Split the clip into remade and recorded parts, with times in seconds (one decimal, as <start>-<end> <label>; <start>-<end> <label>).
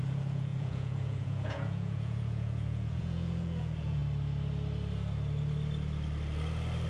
0.0-4.0 remade; 4.0-6.9 recorded